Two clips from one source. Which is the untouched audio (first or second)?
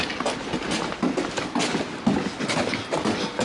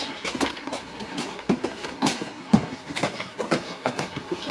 first